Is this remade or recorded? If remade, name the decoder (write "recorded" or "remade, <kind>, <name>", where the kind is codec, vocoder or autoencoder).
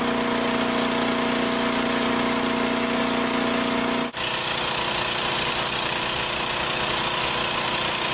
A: recorded